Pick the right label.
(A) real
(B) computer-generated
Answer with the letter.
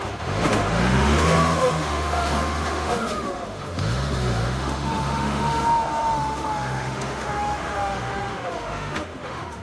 B